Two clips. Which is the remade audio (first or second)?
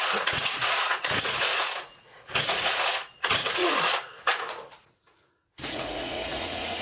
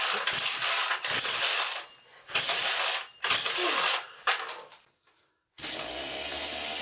first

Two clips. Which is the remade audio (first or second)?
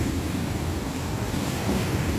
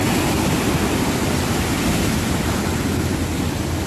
first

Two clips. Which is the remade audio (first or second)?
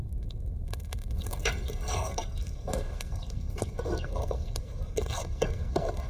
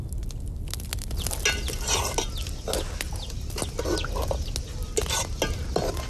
first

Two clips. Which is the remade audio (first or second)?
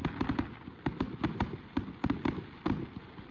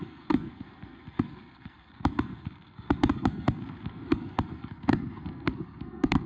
second